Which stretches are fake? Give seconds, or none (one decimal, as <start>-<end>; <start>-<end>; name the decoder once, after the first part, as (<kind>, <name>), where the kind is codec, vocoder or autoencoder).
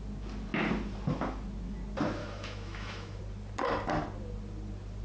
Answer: 2.2-3.2 (autoencoder, DAC-VAE)